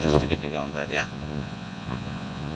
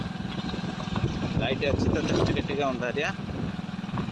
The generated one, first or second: first